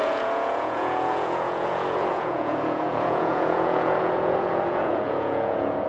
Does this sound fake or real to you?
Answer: fake